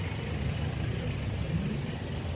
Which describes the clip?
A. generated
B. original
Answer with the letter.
B